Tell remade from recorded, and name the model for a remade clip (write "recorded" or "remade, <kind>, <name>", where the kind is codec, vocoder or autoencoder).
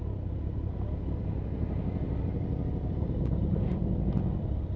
recorded